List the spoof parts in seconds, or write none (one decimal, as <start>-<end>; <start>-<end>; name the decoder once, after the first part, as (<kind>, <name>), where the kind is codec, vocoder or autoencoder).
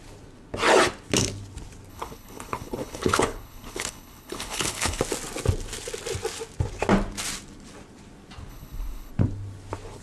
1.9-5.0 (codec, HILCodec); 8.5-9.1